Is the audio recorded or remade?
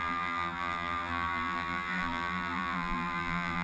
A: remade